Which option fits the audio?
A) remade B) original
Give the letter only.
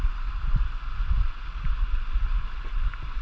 B